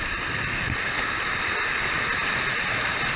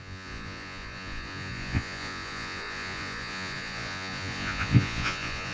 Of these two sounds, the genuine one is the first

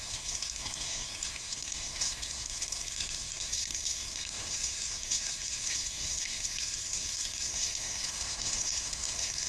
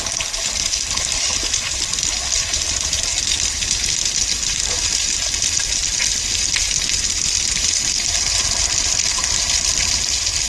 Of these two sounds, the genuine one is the second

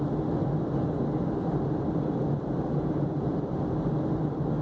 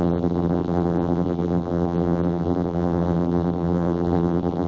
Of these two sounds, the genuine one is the first